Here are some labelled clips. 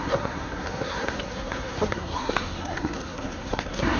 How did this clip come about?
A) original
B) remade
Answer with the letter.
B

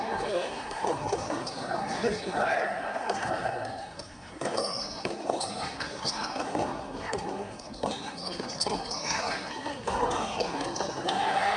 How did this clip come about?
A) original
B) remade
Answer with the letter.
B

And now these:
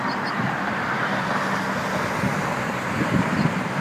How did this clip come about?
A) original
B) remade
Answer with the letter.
A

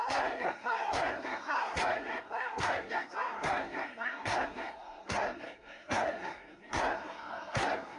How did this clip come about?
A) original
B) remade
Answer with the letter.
B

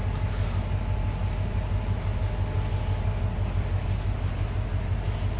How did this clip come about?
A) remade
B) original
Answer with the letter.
B